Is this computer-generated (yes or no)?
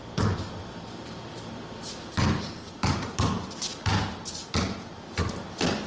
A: no